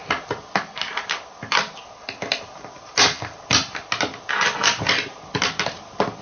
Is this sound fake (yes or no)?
no